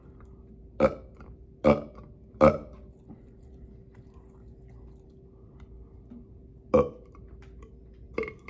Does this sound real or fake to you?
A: real